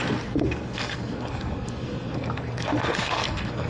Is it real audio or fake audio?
fake